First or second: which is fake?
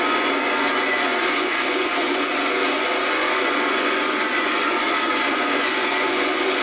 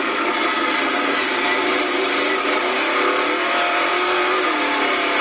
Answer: first